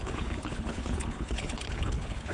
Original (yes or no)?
no